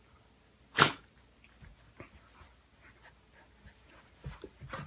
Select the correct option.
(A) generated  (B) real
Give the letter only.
B